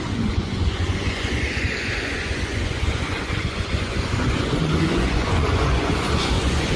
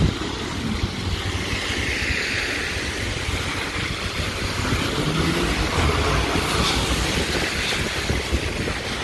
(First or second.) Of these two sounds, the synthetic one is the first